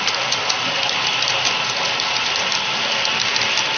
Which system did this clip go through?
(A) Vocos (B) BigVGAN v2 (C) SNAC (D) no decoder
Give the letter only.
B